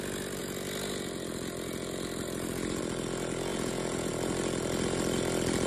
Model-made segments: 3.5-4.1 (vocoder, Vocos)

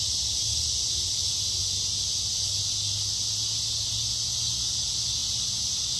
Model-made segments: none

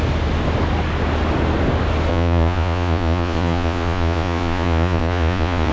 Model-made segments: 2.1-5.7 (vocoder, Vocos)

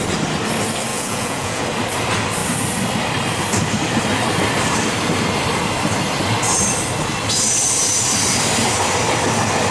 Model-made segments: 0.9-1.6 (vocoder, Vocos)

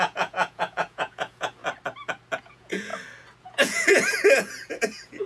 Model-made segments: 0.0-1.6 (vocoder, Vocos); 2.4-2.9; 3.4-5.3

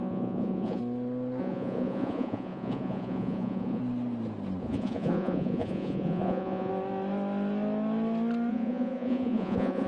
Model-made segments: 0.0-0.8 (vocoder, Vocos); 1.4-3.8; 4.6-6.7; 8.5-9.9

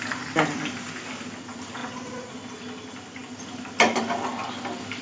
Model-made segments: 1.8-2.3 (vocoder, Vocos)

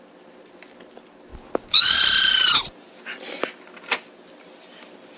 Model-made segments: none